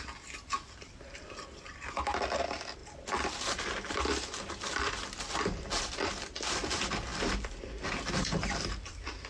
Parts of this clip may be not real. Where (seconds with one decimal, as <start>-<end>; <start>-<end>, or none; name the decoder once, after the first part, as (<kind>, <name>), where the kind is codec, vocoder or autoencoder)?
0.0-9.3 (vocoder, BigVGAN v2)